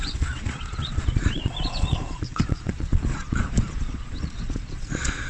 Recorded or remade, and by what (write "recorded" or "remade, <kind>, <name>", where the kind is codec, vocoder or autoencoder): remade, vocoder, Vocos